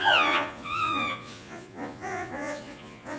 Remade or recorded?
remade